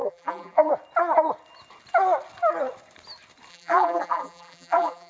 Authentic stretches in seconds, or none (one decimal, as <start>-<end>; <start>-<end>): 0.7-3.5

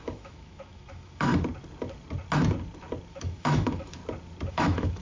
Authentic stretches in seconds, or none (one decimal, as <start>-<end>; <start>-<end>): 1.3-3.1; 4.0-4.5

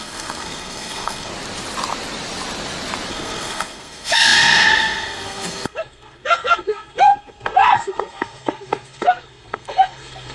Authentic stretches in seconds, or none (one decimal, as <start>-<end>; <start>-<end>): 1.3-3.1

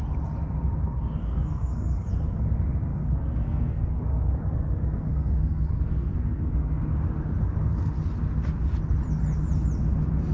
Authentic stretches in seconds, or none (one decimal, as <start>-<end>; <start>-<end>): 0.0-1.2; 2.1-2.9; 6.8-10.3

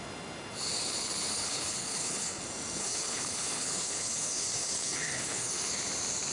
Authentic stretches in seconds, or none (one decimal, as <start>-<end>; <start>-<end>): 0.0-1.3; 2.4-2.8; 5.7-6.3